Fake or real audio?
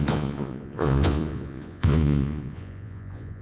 fake